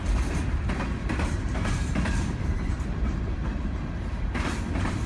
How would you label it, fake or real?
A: fake